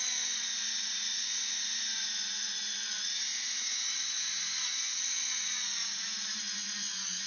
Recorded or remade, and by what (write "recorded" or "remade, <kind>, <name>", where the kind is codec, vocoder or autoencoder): remade, vocoder, Vocos